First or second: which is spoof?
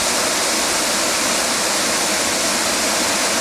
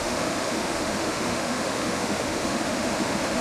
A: second